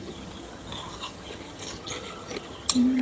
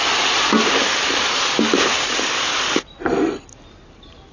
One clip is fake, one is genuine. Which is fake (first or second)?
first